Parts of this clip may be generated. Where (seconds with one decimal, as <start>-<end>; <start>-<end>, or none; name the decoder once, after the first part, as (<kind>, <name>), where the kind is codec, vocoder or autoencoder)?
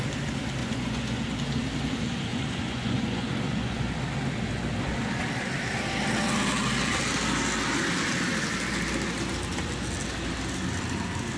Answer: 0.6-1.2 (vocoder, Vocos); 2.3-3.9